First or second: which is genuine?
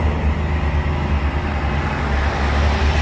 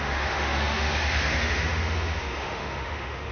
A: first